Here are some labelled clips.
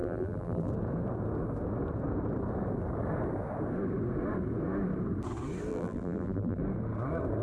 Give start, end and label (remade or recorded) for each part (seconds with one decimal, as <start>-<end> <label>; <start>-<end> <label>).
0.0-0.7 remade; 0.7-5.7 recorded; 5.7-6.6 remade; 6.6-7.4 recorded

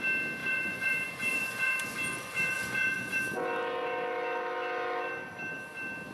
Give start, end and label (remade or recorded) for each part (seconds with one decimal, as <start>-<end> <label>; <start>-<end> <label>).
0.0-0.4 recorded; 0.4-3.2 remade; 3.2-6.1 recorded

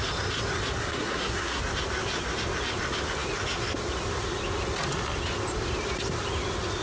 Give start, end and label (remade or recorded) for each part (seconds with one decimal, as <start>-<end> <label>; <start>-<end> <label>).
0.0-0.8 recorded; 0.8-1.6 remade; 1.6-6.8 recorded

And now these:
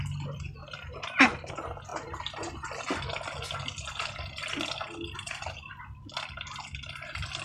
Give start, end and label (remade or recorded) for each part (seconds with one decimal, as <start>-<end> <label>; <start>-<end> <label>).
0.0-0.6 recorded; 0.6-1.5 remade; 1.5-7.4 recorded